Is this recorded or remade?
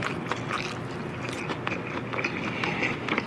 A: recorded